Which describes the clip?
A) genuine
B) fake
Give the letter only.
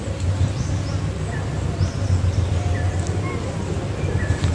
A